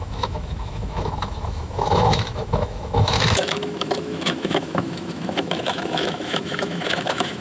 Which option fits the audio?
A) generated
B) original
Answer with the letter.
A